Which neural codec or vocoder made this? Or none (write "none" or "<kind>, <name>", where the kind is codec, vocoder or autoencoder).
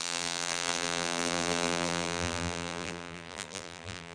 vocoder, BigVGAN v2